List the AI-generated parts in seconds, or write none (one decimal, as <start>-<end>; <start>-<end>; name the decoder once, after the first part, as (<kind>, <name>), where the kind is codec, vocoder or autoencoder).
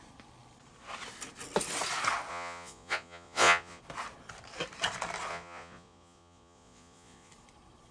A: 2.3-3.8 (vocoder, Vocos); 5.3-7.3